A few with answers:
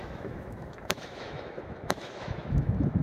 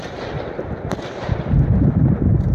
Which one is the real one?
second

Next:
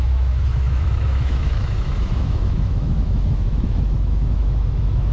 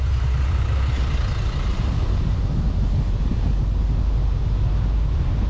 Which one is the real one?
second